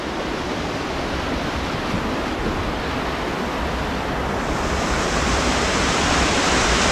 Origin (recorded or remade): recorded